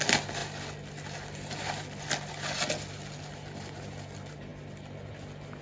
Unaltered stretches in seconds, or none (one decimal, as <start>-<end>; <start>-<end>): 0.0-5.6